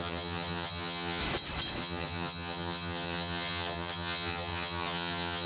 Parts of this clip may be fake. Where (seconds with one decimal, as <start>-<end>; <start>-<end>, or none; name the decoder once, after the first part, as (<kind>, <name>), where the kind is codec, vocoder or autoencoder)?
0.0-1.2 (vocoder, HiFi-GAN); 1.8-5.5